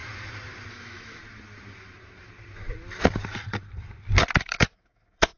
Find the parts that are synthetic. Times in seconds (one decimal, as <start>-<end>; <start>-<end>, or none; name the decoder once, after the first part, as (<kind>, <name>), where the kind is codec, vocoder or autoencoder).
0.7-1.2 (autoencoder, DAC-VAE); 4.4-5.4